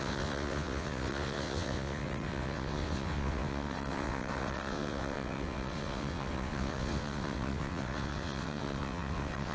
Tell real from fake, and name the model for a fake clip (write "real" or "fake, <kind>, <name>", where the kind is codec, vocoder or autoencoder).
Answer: fake, vocoder, WaveNeXt